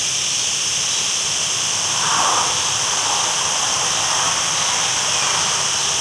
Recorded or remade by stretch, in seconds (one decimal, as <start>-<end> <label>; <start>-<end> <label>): 0.0-6.0 recorded